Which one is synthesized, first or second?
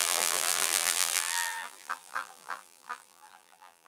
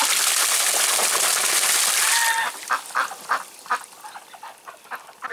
first